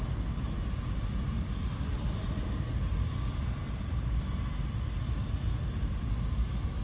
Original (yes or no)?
yes